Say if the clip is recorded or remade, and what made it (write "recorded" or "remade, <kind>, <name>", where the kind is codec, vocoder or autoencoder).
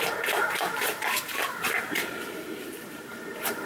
remade, vocoder, BigVGAN v2